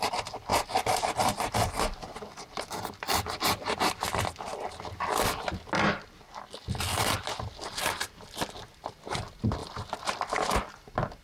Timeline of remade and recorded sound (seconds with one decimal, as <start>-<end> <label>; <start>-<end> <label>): 0.0-11.2 recorded